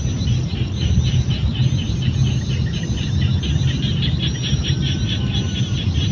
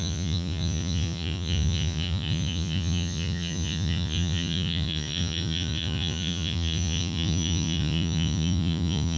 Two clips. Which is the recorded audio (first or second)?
first